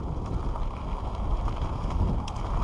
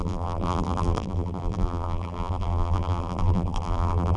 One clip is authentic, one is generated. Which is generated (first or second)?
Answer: second